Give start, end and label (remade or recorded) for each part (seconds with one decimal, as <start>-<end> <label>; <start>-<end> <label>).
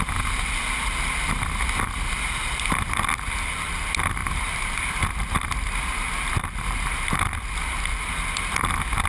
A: 0.0-4.2 recorded; 4.2-5.1 remade; 5.1-9.1 recorded